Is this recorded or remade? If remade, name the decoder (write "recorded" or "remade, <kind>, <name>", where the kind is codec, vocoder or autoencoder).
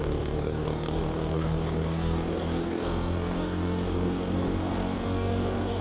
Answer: remade, codec, DAC